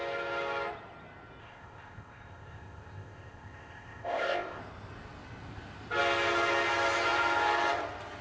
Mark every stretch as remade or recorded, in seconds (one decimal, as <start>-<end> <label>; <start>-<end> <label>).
0.0-1.4 recorded; 1.4-4.6 remade; 4.6-8.2 recorded